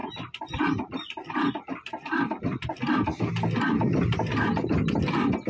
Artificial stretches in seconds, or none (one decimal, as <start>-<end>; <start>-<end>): 0.0-3.3